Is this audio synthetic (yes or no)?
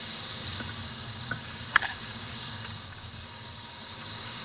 yes